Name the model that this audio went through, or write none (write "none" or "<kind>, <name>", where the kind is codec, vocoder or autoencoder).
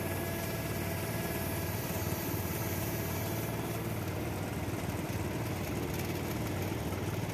none